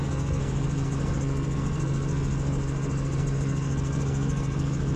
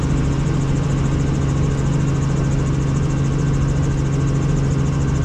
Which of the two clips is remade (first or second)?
first